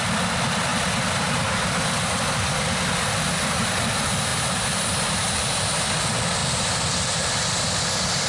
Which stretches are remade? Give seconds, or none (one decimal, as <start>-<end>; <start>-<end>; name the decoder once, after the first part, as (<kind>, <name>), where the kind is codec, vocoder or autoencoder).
0.7-1.4 (vocoder, BigVGAN v2)